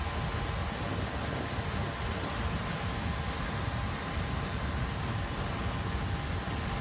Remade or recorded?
recorded